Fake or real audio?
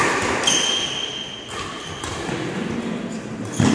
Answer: real